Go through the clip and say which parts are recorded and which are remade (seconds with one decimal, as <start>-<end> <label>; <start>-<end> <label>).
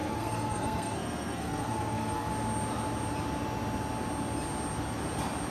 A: 0.0-2.3 remade; 2.3-5.5 recorded